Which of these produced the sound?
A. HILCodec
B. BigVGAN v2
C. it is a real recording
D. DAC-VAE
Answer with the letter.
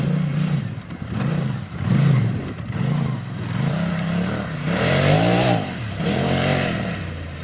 B